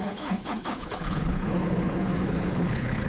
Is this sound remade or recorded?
remade